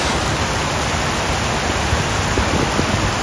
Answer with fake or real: real